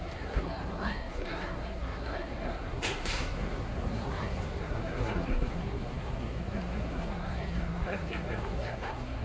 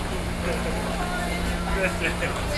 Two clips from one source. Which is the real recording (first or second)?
second